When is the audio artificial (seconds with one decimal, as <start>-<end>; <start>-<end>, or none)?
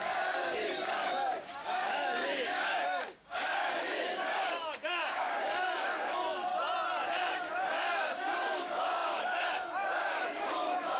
0.0-6.5; 7.1-11.0